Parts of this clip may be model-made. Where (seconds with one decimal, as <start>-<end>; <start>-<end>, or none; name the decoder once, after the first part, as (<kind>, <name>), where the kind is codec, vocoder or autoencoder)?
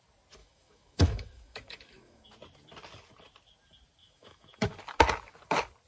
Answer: 0.4-2.3 (autoencoder, DAC-VAE); 4.0-4.7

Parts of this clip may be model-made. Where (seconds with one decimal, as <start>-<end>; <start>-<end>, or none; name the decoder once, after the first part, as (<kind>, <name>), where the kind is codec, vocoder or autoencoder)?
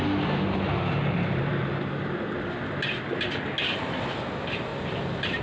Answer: none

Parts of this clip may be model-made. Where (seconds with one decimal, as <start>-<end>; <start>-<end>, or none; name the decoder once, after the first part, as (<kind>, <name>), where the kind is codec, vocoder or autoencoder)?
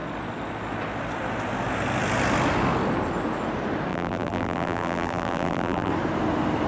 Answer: 3.9-5.9 (vocoder, BigVGAN v2)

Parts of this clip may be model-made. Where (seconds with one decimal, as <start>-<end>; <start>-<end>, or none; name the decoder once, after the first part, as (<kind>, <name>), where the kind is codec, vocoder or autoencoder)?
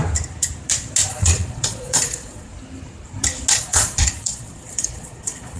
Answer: 1.1-2.5 (vocoder, Vocos); 3.5-5.6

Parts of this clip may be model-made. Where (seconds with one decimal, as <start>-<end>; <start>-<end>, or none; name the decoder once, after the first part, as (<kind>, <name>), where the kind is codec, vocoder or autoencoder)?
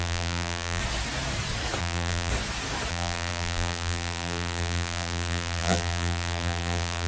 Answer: 0.0-0.8 (vocoder, BigVGAN v2); 1.8-2.3; 2.9-7.1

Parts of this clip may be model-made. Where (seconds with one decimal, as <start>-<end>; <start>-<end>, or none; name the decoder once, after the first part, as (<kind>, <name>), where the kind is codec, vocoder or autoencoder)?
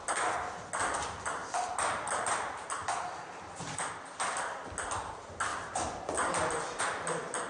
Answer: none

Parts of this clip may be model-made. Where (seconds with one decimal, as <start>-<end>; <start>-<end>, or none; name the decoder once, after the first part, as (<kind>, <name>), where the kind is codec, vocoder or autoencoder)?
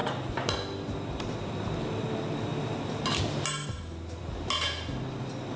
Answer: none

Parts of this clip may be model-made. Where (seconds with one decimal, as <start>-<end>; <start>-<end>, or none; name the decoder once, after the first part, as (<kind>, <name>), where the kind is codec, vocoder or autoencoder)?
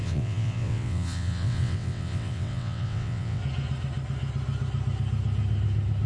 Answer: 0.0-3.4 (vocoder, WaveNeXt)